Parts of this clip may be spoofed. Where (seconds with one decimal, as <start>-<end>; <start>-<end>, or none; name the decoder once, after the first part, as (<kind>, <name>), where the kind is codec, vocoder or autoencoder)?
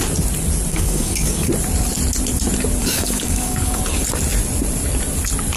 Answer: 0.7-1.5 (codec, DAC); 2.8-3.8